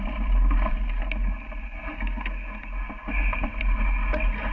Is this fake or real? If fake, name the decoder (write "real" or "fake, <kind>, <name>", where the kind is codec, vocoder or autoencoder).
real